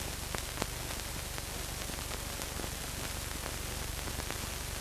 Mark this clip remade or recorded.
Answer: recorded